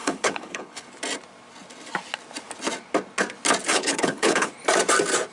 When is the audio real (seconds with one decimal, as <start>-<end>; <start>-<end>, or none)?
0.9-3.7; 4.5-5.3

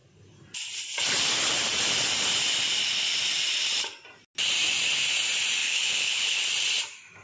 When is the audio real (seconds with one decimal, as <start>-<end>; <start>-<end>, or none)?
0.0-5.6; 6.4-7.2

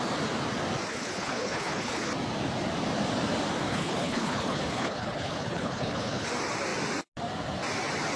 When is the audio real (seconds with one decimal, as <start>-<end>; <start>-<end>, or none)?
0.0-0.9; 2.1-3.7; 6.3-8.2

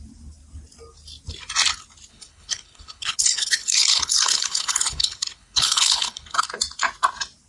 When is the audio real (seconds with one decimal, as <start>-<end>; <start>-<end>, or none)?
0.0-2.1; 6.4-7.5